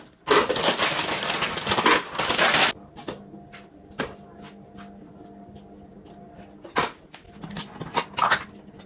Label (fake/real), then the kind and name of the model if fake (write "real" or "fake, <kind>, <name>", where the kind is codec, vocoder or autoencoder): real